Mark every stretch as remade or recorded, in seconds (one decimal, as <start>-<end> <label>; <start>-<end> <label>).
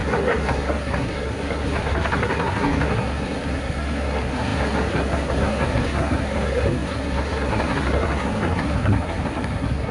0.0-9.9 remade